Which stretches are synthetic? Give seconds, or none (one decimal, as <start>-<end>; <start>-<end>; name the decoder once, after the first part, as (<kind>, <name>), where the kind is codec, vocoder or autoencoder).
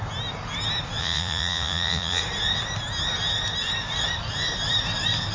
1.0-2.2 (vocoder, Vocos)